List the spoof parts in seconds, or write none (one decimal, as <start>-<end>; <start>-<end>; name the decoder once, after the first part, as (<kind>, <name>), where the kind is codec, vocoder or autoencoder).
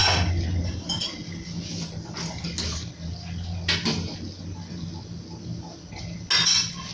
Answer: none